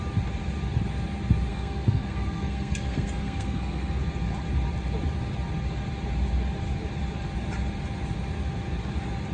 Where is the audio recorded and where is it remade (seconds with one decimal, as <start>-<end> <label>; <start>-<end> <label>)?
0.0-1.5 recorded; 1.5-4.0 remade; 4.0-9.3 recorded